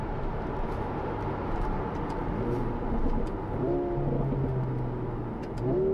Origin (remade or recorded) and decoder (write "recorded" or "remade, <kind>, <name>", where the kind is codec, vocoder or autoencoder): recorded